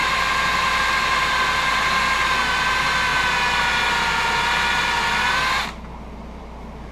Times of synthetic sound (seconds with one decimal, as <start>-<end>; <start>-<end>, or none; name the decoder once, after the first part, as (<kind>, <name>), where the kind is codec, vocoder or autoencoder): 0.0-2.0 (vocoder, BigVGAN v2)